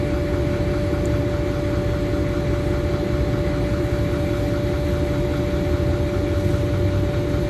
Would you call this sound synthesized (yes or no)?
no